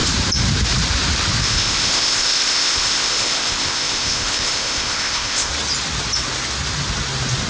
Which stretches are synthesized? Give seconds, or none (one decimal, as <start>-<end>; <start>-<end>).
1.4-5.5